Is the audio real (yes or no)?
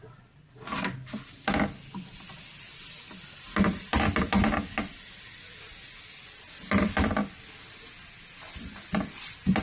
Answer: yes